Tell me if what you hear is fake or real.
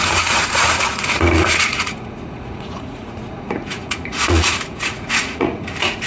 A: fake